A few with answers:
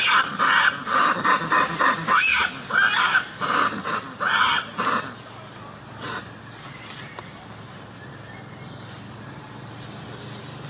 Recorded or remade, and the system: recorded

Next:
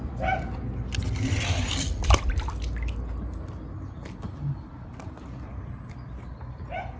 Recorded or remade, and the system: recorded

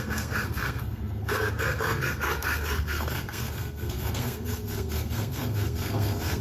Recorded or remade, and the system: remade, codec, SNAC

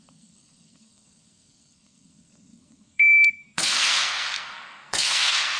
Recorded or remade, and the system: remade, codec, SNAC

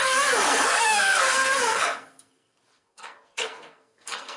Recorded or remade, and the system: remade, codec, SNAC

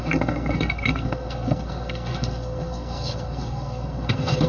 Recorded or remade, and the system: remade, codec, SNAC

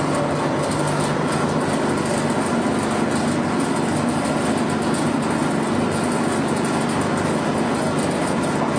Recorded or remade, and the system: recorded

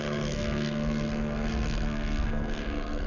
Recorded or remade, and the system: remade, codec, SNAC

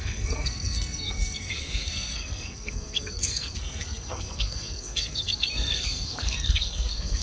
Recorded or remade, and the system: remade, codec, SNAC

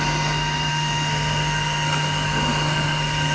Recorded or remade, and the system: remade, codec, SNAC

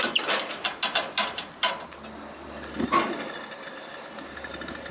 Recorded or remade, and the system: recorded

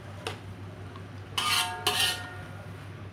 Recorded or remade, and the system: recorded